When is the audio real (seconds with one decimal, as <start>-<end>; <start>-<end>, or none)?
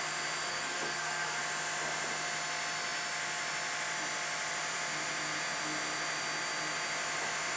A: 0.0-0.5; 1.4-7.6